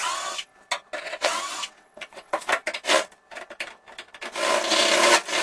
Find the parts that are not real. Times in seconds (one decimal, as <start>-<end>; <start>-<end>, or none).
0.0-0.5; 1.0-2.5